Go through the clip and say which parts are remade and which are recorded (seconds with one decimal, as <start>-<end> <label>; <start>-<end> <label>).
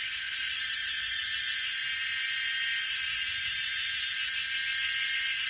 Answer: 0.0-1.2 remade; 1.2-5.5 recorded